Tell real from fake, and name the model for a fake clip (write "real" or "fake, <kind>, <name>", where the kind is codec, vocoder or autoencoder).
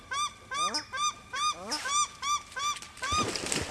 real